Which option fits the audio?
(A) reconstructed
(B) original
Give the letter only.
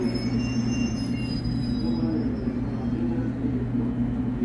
B